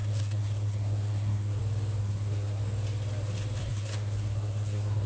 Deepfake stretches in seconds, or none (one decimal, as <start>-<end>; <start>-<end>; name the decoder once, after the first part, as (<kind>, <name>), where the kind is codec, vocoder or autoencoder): 0.0-1.6 (codec, SNAC); 2.0-2.6; 3.6-5.1